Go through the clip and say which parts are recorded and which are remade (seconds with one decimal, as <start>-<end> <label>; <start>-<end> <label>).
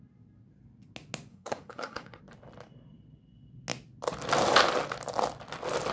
0.0-1.3 recorded; 1.3-2.2 remade; 2.2-5.9 recorded